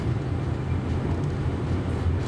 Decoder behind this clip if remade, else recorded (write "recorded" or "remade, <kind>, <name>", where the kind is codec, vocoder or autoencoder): recorded